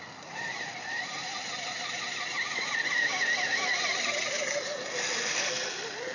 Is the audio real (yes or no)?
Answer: yes